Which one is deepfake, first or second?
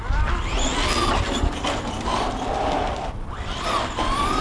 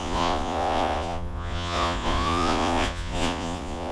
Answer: second